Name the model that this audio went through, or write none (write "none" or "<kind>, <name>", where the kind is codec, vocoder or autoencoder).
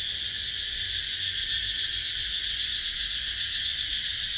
vocoder, Vocos